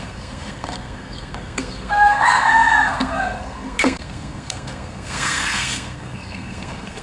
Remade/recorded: remade